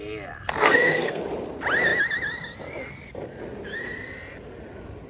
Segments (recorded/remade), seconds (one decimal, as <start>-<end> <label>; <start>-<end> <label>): 0.0-0.6 recorded; 0.6-1.2 remade; 1.2-5.1 recorded